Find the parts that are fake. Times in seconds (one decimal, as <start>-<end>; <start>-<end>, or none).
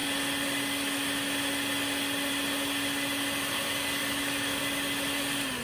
4.0-4.6